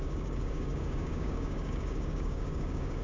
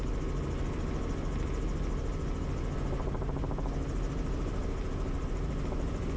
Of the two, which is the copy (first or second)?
first